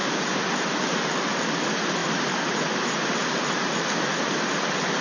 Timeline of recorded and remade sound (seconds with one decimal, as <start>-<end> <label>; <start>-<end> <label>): 0.0-2.0 recorded; 2.0-3.4 remade; 3.4-5.0 recorded